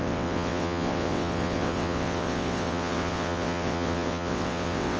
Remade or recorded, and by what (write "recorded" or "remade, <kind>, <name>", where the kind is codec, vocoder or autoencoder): remade, vocoder, WaveNeXt